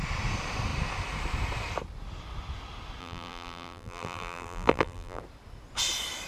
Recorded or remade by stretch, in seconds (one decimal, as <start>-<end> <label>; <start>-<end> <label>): 0.0-3.0 recorded; 3.0-5.2 remade; 5.2-6.3 recorded